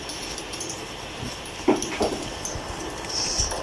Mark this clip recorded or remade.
recorded